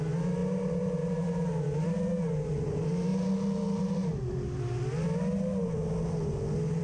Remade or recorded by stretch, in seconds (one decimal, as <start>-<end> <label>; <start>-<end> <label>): 0.0-0.4 recorded; 0.4-1.0 remade; 1.0-3.1 recorded; 3.1-3.8 remade; 3.8-6.8 recorded